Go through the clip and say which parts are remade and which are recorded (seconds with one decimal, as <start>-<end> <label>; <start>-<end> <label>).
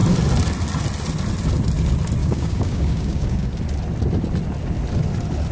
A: 0.0-2.2 recorded; 2.2-3.5 remade; 3.5-5.5 recorded